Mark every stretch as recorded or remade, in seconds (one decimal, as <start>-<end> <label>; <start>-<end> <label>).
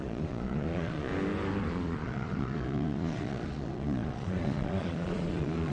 0.0-1.1 remade; 1.1-1.6 recorded; 1.6-5.7 remade